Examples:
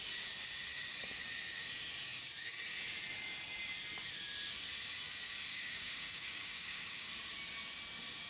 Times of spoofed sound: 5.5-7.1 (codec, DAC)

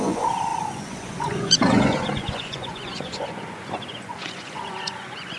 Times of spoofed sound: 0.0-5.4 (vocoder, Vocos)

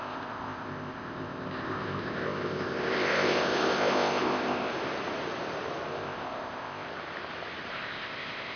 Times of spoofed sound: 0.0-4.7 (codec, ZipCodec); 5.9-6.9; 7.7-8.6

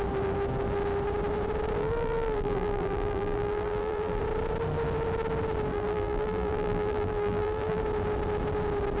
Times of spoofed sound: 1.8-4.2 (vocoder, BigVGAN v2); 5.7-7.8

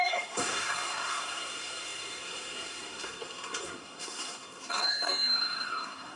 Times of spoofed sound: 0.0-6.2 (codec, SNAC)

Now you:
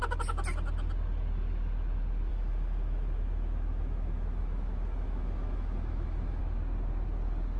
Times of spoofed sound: 2.3-6.4 (autoencoder, DAC-VAE)

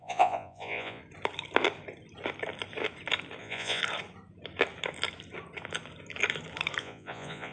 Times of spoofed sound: 0.0-1.0 (vocoder, Vocos); 3.4-3.8; 6.8-7.5

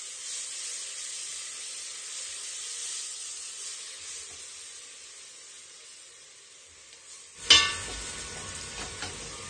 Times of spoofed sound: none